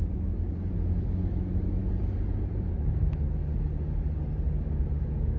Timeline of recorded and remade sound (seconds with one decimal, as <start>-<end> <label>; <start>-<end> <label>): 0.0-1.8 remade; 1.8-2.7 recorded; 2.7-3.4 remade; 3.4-4.8 recorded; 4.8-5.4 remade